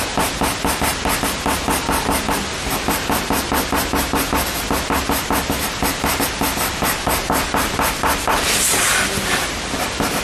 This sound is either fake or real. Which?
real